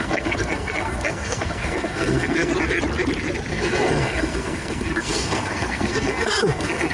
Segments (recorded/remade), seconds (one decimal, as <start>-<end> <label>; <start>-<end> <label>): 0.0-2.5 remade; 2.5-3.5 recorded; 3.5-6.9 remade